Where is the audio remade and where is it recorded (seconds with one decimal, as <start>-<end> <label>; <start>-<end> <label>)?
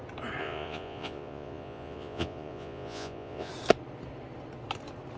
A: 0.0-0.4 recorded; 0.4-3.5 remade; 3.5-5.2 recorded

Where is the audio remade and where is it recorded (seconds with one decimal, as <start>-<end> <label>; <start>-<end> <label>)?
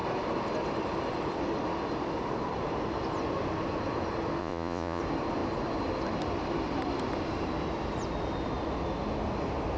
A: 0.0-4.4 recorded; 4.4-5.0 remade; 5.0-9.8 recorded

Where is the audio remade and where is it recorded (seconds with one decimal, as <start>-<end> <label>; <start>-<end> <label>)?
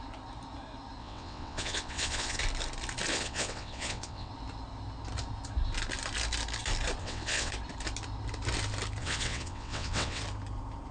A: 0.0-1.0 recorded; 1.0-2.4 remade; 2.4-3.1 recorded; 3.1-4.3 remade; 4.3-7.0 recorded; 7.0-7.5 remade; 7.5-9.0 recorded; 9.0-10.2 remade; 10.2-10.9 recorded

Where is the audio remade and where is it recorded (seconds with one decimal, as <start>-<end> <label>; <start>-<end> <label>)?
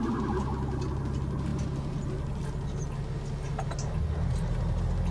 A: 0.0-5.1 recorded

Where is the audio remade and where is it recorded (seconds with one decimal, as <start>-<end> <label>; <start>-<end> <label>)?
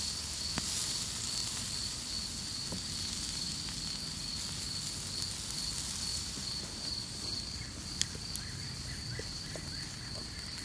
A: 0.0-1.4 recorded; 1.4-2.1 remade; 2.1-6.1 recorded; 6.1-7.1 remade; 7.1-10.6 recorded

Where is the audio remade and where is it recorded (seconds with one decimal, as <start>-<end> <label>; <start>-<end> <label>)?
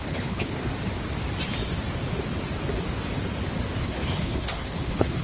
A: 0.0-0.7 remade; 0.7-3.8 recorded; 3.8-5.2 remade